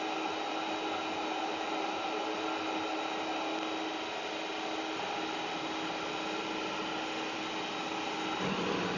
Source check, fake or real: real